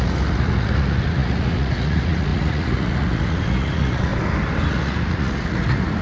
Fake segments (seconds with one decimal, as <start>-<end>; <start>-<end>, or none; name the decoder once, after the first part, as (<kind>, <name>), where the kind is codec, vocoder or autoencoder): 0.0-4.1 (vocoder, Vocos); 4.7-6.0